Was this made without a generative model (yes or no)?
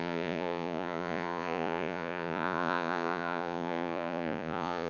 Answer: no